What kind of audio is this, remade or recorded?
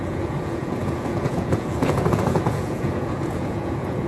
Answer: remade